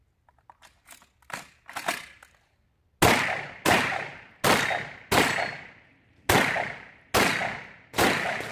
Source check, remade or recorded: recorded